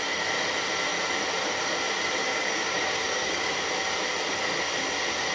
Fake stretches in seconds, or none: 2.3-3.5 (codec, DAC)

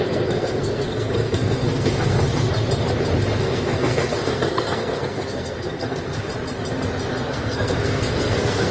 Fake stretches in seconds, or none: 0.0-2.3 (codec, SNAC); 3.4-6.3; 7.3-8.7

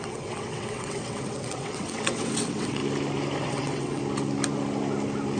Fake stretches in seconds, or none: 0.0-2.8 (vocoder, WaveNeXt); 3.4-4.0

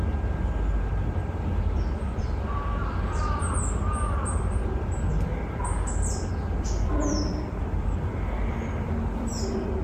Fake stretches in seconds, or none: 0.0-9.8 (vocoder, BigVGAN v2)

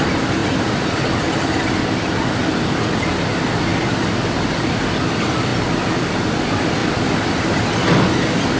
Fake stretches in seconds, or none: 0.4-1.7 (vocoder, BigVGAN v2); 6.8-7.7

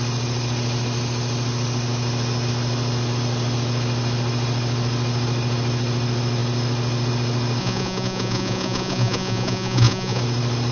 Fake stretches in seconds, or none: 7.6-10.2 (vocoder, Vocos)

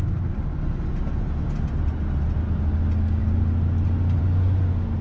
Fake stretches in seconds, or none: none

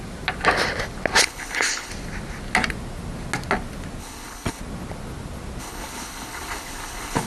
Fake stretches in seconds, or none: 1.2-1.9 (codec, HILCodec); 4.0-4.6; 5.6-7.3